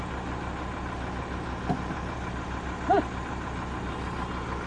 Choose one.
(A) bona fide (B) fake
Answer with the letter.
A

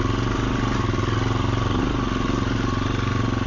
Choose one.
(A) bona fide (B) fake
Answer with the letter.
A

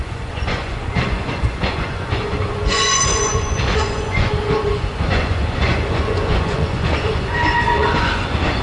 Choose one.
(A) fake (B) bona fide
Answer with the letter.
A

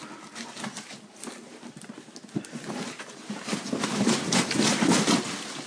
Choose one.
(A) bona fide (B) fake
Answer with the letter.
A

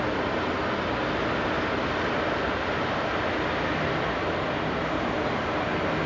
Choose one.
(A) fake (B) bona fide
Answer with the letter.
B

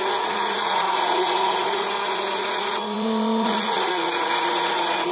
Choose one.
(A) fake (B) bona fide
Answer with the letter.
A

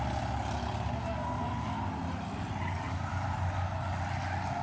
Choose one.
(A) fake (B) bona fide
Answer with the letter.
B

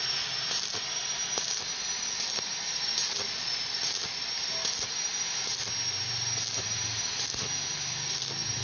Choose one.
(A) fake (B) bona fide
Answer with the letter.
B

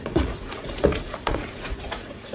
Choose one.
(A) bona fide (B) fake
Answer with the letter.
B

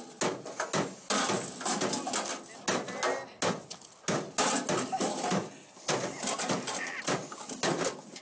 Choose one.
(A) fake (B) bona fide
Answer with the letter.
B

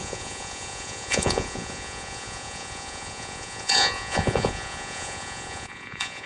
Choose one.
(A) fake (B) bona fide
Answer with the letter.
A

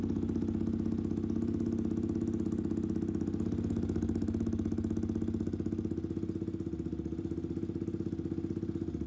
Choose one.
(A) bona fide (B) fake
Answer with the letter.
A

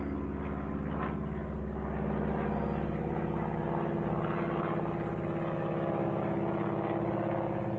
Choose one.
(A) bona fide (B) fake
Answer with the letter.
A